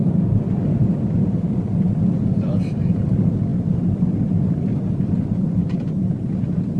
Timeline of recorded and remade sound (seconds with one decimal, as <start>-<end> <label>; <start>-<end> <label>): 0.0-3.5 recorded; 3.5-4.1 remade; 4.1-5.6 recorded; 5.6-6.3 remade; 6.3-6.8 recorded